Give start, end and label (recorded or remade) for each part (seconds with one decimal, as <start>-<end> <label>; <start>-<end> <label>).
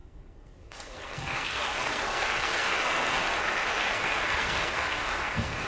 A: 0.0-5.7 remade